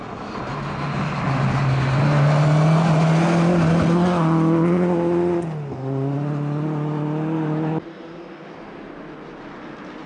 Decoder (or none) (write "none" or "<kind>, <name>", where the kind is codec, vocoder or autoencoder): none